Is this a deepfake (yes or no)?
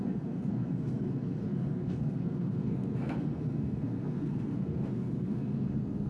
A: yes